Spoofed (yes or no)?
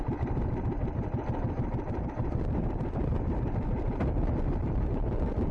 yes